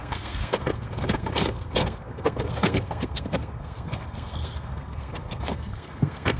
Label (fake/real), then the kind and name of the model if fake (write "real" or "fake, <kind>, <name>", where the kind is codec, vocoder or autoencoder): fake, codec, SNAC